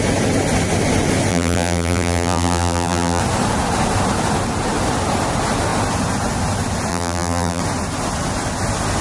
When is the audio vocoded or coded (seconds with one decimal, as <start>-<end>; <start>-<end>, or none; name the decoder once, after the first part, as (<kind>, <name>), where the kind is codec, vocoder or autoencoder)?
1.3-3.2 (vocoder, BigVGAN v2); 6.9-7.6